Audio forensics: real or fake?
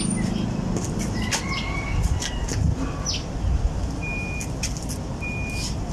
real